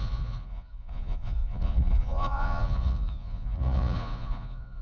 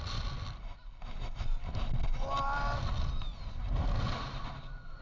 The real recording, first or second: second